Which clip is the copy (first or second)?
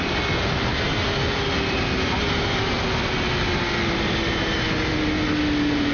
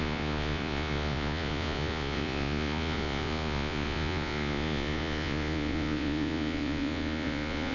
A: second